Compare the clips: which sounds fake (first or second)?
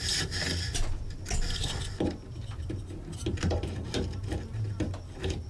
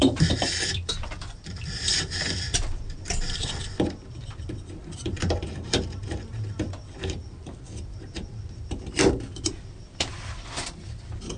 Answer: second